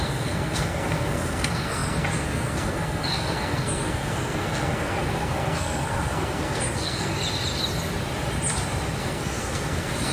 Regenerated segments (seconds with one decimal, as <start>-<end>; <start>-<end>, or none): 0.0-7.1; 9.0-10.1